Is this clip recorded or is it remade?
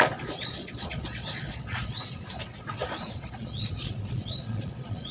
remade